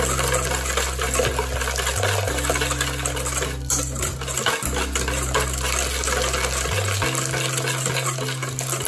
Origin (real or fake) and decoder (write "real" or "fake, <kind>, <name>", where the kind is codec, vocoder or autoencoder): real